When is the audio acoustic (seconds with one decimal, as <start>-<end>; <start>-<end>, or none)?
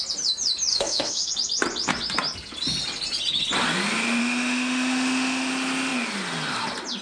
0.0-0.7; 1.3-4.2; 5.5-7.0